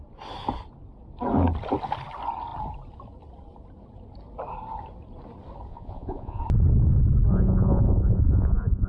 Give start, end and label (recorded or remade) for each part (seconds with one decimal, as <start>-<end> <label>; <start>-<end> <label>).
0.0-5.7 recorded; 5.7-6.4 remade; 6.4-7.3 recorded; 7.3-8.9 remade